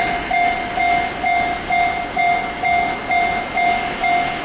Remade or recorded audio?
recorded